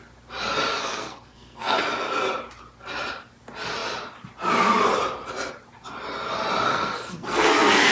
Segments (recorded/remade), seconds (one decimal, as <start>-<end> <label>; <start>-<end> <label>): 0.0-0.7 recorded; 0.7-1.8 remade; 1.8-6.7 recorded; 6.7-7.9 remade